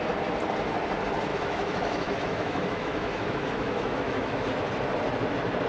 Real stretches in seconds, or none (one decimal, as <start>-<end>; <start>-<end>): 0.0-1.3; 4.5-5.7